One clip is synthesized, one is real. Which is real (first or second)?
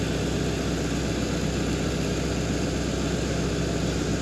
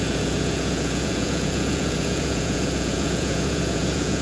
first